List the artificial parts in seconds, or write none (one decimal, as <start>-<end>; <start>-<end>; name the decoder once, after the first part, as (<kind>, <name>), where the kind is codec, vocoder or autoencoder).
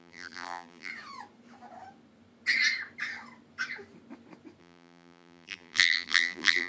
0.0-0.9 (vocoder, BigVGAN v2); 4.6-6.7